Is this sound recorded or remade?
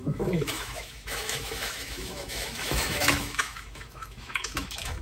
remade